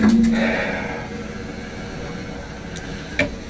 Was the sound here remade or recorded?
recorded